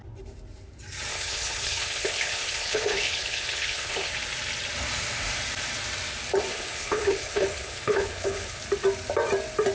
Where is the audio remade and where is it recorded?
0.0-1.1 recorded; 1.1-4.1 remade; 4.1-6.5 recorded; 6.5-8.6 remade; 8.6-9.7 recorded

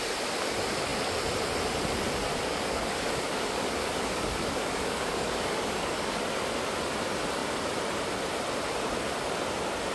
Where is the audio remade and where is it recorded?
0.0-2.3 recorded; 2.3-6.2 remade; 6.2-9.9 recorded